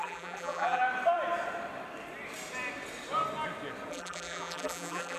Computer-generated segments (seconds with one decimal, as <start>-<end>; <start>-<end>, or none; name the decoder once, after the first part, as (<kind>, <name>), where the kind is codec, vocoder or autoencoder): 0.0-0.8 (vocoder, BigVGAN v2); 3.9-5.2